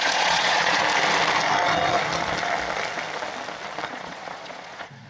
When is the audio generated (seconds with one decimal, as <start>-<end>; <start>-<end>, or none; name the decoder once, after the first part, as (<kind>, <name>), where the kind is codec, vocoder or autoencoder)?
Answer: 0.0-0.8 (vocoder, Vocos); 3.9-5.1